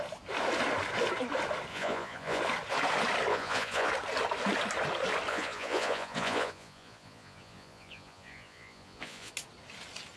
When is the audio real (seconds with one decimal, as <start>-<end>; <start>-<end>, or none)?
0.0-1.7; 2.4-3.3; 3.9-5.3; 9.3-10.2